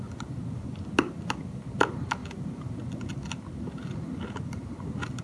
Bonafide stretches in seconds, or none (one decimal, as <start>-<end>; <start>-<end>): 0.0-5.2